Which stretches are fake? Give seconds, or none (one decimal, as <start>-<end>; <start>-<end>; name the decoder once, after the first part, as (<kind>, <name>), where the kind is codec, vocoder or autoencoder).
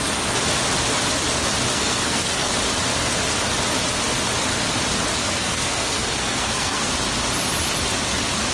1.7-2.5 (codec, SNAC); 5.1-6.9